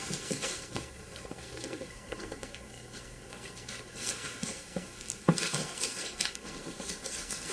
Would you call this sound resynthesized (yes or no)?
yes